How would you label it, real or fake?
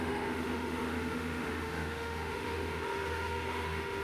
fake